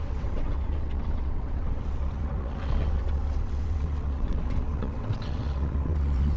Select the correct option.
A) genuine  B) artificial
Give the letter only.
B